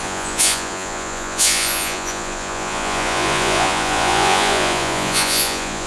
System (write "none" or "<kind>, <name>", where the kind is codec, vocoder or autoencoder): vocoder, Vocos